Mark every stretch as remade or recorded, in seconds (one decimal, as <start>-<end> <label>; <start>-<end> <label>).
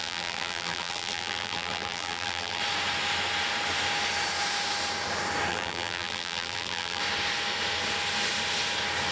0.0-2.6 remade; 2.6-5.5 recorded; 5.5-7.0 remade; 7.0-9.1 recorded